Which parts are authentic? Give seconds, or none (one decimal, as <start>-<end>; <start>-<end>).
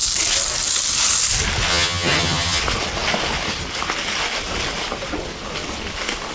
0.0-1.7; 2.6-6.3